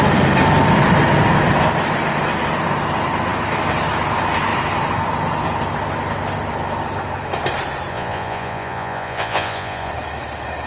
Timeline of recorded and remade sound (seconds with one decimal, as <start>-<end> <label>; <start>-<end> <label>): 0.0-7.9 recorded; 7.9-9.9 remade; 9.9-10.7 recorded